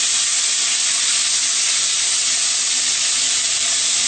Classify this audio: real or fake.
real